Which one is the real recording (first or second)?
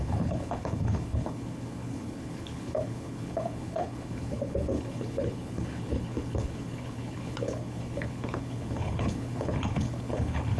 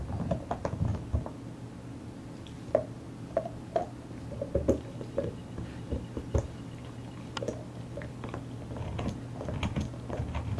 second